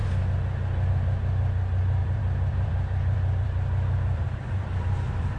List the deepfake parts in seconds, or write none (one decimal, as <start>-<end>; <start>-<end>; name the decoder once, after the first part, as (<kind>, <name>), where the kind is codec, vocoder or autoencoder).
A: 2.0-5.4 (vocoder, BigVGAN v2)